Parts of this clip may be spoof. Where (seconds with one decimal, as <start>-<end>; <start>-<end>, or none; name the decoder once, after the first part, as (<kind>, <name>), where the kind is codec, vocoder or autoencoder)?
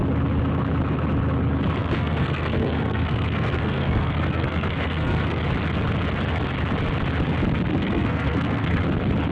1.8-5.4 (codec, SNAC); 7.7-8.8